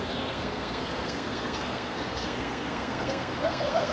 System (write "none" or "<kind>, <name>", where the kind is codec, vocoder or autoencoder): codec, SNAC